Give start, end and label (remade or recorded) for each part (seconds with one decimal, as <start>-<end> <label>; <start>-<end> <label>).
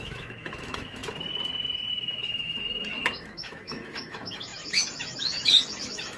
0.0-1.0 remade; 1.0-1.9 recorded; 1.9-6.2 remade